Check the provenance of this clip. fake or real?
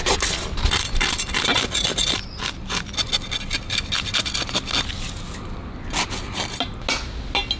real